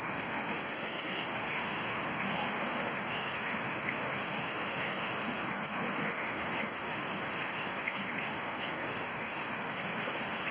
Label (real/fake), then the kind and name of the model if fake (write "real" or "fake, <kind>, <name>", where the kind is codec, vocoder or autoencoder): fake, autoencoder, DAC-VAE